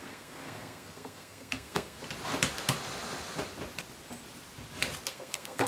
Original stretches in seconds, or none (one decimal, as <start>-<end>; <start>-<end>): 2.0-5.1